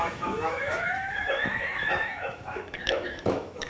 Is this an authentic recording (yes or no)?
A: no